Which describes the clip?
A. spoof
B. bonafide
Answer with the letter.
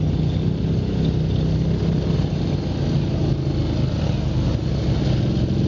B